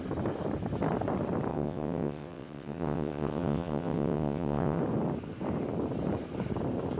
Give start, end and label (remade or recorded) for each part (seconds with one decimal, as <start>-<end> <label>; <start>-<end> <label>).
0.0-1.5 recorded; 1.5-4.8 remade; 4.8-7.0 recorded